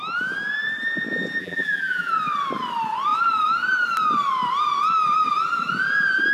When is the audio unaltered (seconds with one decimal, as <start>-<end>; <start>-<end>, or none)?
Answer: 0.0-1.4; 2.1-6.3

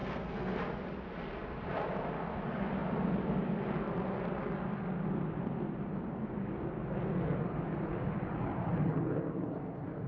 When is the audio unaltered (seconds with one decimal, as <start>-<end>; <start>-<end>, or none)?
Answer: 0.6-10.1